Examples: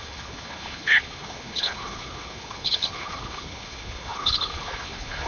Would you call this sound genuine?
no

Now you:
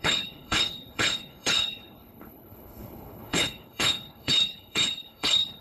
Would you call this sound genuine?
no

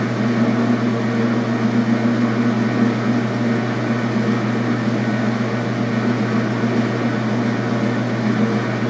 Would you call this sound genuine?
yes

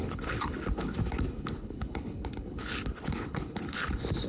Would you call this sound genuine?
no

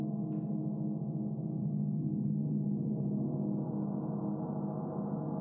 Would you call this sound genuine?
yes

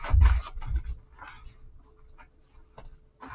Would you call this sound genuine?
yes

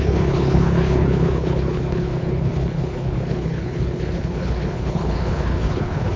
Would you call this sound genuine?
no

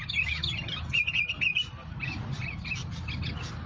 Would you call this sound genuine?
yes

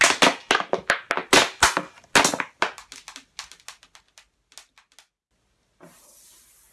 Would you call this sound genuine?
yes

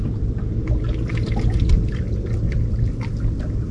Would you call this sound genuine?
yes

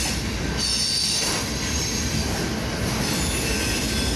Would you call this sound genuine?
yes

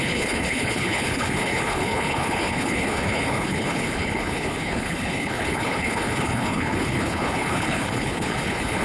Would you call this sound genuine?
no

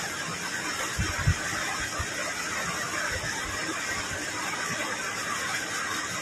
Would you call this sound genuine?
yes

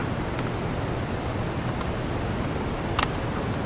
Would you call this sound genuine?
yes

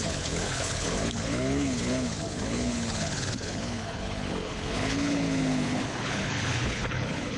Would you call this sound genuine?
no